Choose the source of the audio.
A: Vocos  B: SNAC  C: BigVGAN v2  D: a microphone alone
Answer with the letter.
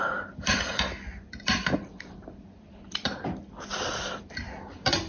C